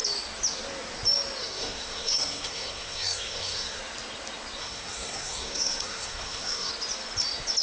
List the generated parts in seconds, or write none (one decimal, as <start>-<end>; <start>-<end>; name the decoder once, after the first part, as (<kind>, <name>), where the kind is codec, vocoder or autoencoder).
1.4-3.8 (codec, SNAC); 4.6-6.7